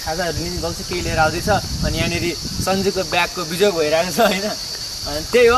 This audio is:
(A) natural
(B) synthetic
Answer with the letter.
A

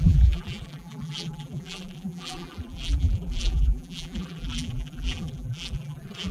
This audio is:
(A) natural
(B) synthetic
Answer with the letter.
B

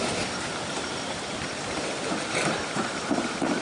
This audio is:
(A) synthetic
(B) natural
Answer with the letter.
A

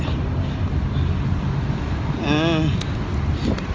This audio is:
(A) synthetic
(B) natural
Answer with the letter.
B